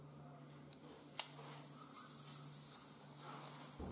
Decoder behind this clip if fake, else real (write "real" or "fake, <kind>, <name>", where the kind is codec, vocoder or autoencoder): real